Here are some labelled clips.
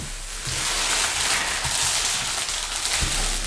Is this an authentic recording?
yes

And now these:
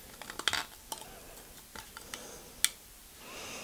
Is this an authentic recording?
yes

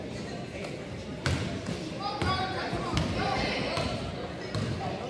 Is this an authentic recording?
yes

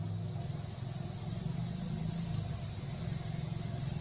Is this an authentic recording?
no